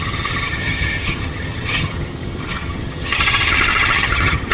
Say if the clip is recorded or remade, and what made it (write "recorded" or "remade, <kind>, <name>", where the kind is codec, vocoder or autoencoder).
remade, vocoder, HiFi-GAN